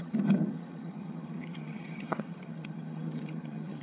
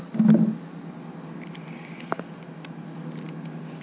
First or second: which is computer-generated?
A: first